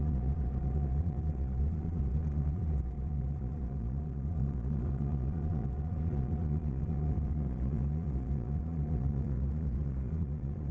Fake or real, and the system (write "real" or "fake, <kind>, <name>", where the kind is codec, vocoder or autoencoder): fake, vocoder, Vocos